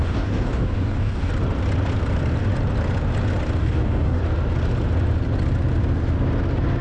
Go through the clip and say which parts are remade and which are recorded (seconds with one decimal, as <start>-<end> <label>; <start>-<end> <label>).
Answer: 0.0-1.3 remade; 1.3-3.6 recorded; 3.6-4.2 remade; 4.2-6.8 recorded